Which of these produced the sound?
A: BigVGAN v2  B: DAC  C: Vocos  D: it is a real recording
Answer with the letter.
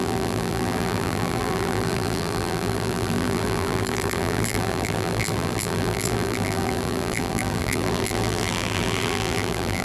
A